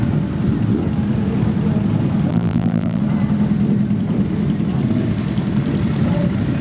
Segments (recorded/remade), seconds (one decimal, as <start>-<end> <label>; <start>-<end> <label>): 0.0-2.3 recorded; 2.3-3.0 remade; 3.0-6.6 recorded